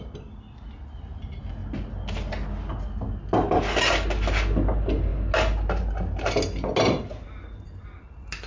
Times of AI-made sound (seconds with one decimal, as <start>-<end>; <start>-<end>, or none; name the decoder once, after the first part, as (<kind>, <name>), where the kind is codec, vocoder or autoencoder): none